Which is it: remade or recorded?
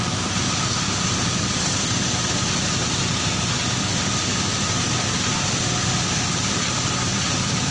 recorded